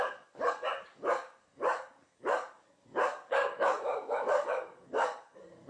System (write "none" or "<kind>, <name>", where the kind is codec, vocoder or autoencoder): codec, DAC